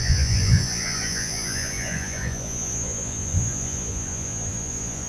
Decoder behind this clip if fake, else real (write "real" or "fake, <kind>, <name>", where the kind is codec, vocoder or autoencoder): fake, vocoder, Vocos